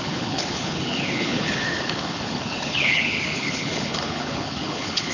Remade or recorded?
remade